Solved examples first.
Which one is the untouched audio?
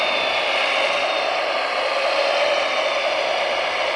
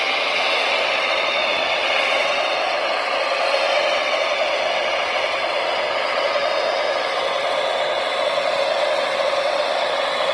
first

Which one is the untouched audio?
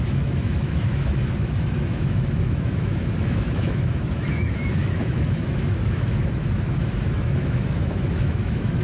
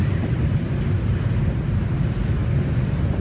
second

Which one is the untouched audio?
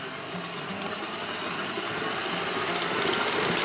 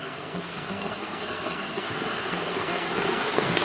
first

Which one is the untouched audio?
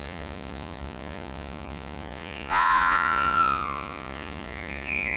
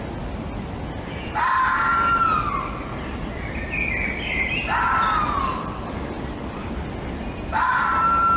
second